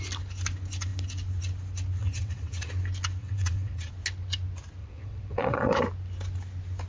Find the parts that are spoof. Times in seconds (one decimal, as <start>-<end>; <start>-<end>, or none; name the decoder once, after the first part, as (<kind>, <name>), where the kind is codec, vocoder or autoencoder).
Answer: 2.0-2.7 (vocoder, WaveNeXt); 3.2-3.9; 4.8-5.8